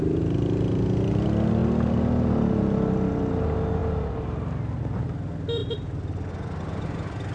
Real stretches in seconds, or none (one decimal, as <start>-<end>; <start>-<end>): 0.0-7.3